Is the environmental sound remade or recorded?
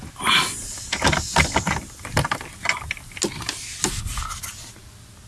recorded